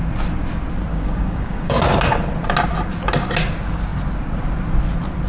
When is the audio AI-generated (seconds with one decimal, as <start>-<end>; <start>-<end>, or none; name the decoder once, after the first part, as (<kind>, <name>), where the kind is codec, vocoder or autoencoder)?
0.9-1.8 (codec, DAC)